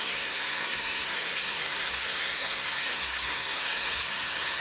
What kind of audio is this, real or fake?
fake